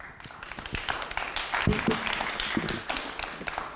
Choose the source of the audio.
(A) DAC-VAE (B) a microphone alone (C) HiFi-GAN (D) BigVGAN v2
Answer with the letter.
D